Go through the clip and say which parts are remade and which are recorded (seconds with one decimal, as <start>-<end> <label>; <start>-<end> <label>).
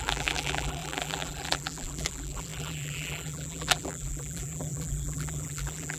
0.0-6.0 remade